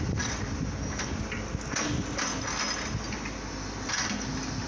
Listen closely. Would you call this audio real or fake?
real